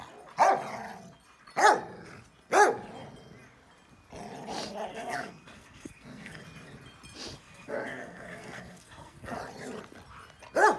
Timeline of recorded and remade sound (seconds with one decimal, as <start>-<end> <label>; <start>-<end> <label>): 0.0-4.9 recorded; 4.9-6.4 remade; 6.4-7.4 recorded; 7.4-9.4 remade; 9.4-10.8 recorded